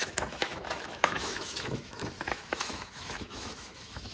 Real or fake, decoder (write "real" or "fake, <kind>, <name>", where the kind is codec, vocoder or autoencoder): fake, autoencoder, DAC-VAE